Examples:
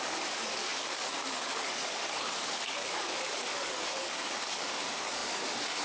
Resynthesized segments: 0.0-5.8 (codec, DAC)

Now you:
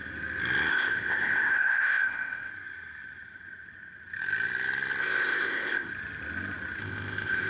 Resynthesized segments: 0.7-2.5 (codec, ZipCodec); 5.0-5.9; 6.8-7.5